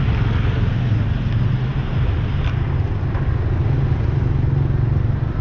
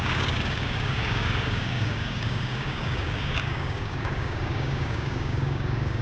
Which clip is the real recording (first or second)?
first